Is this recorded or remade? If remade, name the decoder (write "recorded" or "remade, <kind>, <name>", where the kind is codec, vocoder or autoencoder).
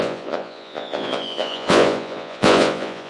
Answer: remade, vocoder, Vocos